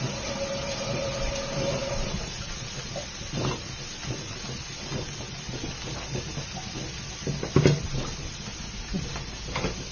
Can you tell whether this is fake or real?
real